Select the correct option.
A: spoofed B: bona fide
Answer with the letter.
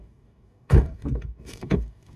A